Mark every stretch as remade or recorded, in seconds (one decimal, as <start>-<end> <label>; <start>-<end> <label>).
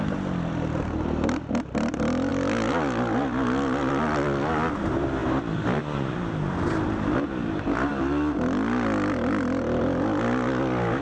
0.0-11.0 recorded